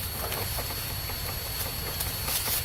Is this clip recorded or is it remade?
recorded